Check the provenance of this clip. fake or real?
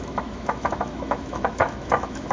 fake